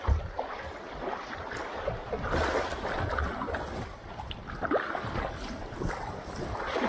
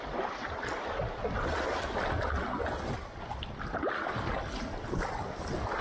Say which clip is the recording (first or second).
second